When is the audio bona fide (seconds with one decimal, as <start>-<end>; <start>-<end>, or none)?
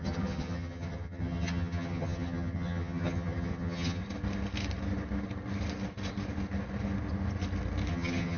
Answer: 4.0-7.9